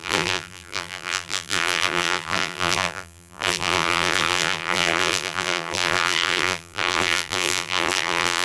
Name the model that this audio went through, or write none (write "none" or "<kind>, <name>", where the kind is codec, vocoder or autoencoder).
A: vocoder, BigVGAN v2